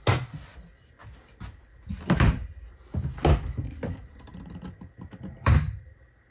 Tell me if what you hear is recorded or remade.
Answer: recorded